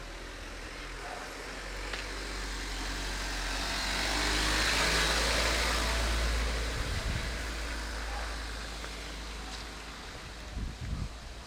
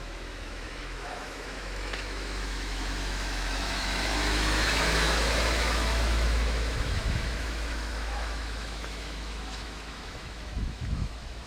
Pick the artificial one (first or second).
second